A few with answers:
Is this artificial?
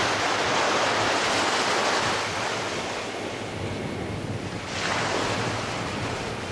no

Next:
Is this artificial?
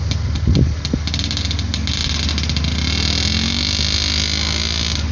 no